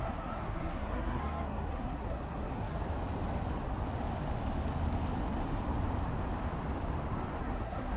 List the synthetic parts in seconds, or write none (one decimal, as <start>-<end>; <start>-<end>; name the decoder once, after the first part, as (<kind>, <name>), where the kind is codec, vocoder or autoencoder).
0.0-2.8 (codec, SNAC); 7.4-8.0